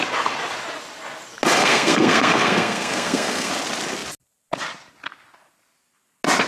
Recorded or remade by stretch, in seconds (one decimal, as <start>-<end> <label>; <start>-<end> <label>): 0.0-1.6 recorded; 1.6-3.5 remade; 3.5-6.5 recorded